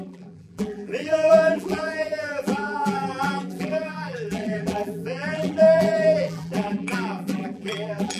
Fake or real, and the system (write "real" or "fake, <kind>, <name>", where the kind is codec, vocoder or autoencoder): fake, vocoder, BigVGAN v2